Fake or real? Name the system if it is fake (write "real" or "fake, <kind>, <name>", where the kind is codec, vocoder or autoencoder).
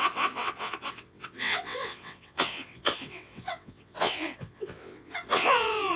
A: fake, vocoder, WaveNeXt